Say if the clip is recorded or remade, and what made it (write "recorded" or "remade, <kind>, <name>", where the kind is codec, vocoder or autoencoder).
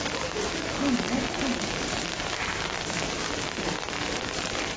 recorded